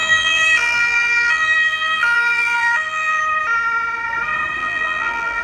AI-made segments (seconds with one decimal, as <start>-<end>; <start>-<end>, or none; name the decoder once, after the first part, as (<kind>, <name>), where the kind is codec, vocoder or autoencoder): 0.0-3.2 (vocoder, BigVGAN v2); 4.6-5.4